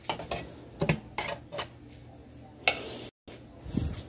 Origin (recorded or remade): recorded